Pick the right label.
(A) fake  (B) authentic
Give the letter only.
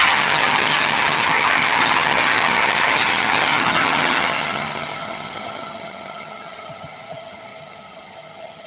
A